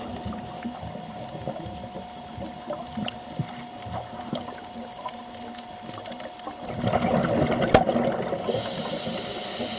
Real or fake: real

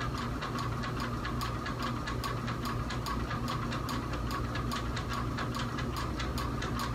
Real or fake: real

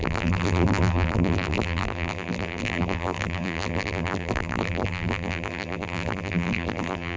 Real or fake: fake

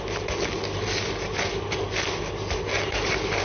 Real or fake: real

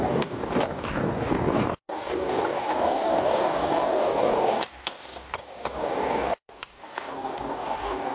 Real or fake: fake